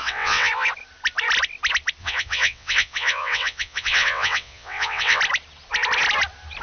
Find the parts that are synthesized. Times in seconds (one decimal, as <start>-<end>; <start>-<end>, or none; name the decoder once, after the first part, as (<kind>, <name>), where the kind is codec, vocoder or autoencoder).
0.0-0.5 (vocoder, WaveNeXt); 2.0-5.2